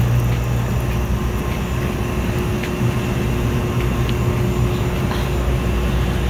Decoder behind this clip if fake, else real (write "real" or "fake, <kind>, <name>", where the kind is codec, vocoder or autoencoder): real